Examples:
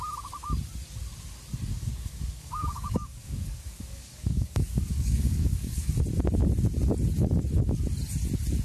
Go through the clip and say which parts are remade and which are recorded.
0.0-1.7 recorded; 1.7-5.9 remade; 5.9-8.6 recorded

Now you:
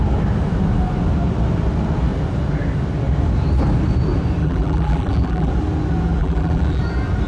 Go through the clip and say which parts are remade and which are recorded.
0.0-4.4 recorded; 4.4-5.5 remade; 5.5-6.2 recorded; 6.2-6.8 remade; 6.8-7.3 recorded

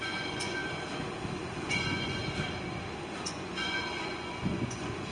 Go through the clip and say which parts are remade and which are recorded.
0.0-0.6 remade; 0.6-1.6 recorded; 1.6-2.2 remade; 2.2-3.2 recorded; 3.2-5.1 remade

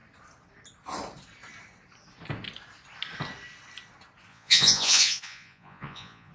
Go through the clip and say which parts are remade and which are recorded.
0.0-4.3 recorded; 4.3-6.3 remade

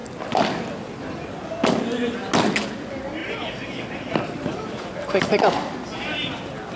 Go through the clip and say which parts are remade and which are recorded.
0.0-6.8 recorded

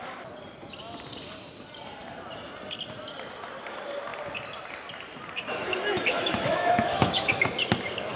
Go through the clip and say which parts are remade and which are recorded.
0.0-5.7 recorded; 5.7-7.4 remade; 7.4-8.2 recorded